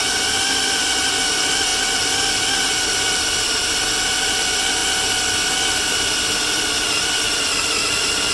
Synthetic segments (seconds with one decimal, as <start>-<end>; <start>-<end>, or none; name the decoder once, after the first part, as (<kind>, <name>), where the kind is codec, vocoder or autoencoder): 0.8-1.7 (vocoder, BigVGAN v2); 3.1-4.8; 6.5-8.3